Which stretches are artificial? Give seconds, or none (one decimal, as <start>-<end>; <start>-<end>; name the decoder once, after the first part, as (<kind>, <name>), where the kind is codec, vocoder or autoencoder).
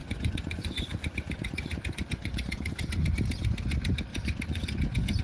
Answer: 0.0-3.1 (vocoder, Vocos); 4.1-5.2